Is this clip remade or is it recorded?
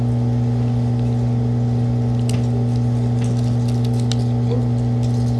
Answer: recorded